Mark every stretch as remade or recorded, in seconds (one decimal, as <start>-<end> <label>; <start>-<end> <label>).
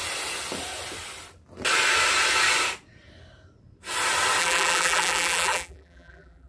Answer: 0.0-4.4 recorded; 4.4-6.5 remade